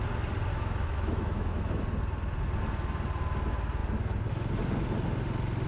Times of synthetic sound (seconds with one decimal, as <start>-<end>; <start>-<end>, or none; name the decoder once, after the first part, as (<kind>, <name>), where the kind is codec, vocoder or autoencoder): 0.5-1.8 (autoencoder, DAC-VAE)